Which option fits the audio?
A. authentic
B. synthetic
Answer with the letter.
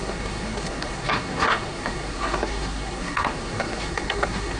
B